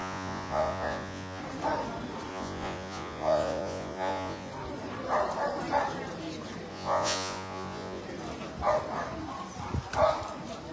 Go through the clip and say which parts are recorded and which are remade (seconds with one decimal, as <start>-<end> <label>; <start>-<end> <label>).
0.0-1.4 remade; 1.4-2.3 recorded; 2.3-4.5 remade; 4.5-6.7 recorded; 6.7-8.0 remade; 8.0-10.7 recorded